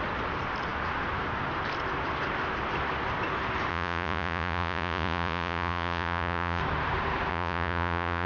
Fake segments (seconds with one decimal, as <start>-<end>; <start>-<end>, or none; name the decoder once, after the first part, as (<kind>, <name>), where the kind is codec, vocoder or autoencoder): 3.7-6.6 (vocoder, Vocos); 7.3-8.3